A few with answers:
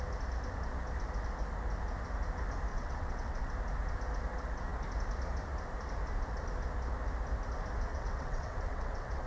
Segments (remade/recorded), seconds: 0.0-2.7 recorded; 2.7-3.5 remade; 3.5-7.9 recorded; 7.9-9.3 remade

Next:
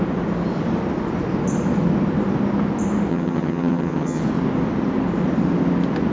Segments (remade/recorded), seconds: 0.0-3.1 recorded; 3.1-4.2 remade; 4.2-6.1 recorded

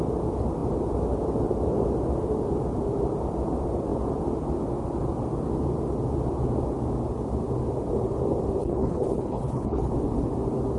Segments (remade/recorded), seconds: 0.0-8.6 recorded; 8.6-9.9 remade; 9.9-10.8 recorded

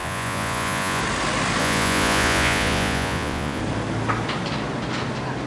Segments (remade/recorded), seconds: 0.0-1.0 remade; 1.0-1.6 recorded; 1.6-3.6 remade; 3.6-5.5 recorded

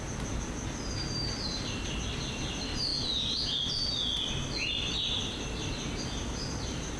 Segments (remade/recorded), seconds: 0.0-7.0 recorded

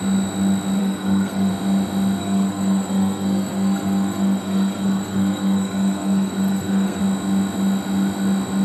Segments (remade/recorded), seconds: 0.0-0.8 recorded; 0.8-1.5 remade; 1.5-2.2 recorded; 2.2-7.0 remade; 7.0-8.6 recorded

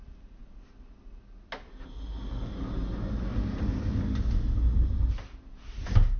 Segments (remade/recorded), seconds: 0.0-6.2 recorded